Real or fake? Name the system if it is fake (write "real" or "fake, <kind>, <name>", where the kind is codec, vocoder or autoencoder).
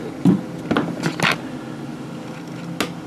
real